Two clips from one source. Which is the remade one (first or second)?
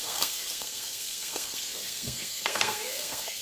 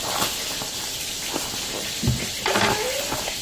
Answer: first